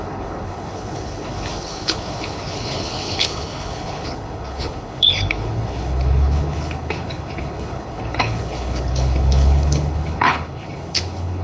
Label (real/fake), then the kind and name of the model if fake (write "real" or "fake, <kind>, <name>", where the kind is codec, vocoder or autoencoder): fake, codec, HILCodec